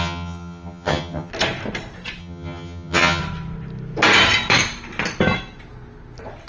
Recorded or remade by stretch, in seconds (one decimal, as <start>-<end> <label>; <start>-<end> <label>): 0.0-1.3 remade; 1.3-2.2 recorded; 2.2-3.2 remade; 3.2-6.5 recorded